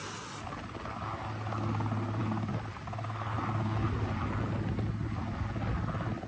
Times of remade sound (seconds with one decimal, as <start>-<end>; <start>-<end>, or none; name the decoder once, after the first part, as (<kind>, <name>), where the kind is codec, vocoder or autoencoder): none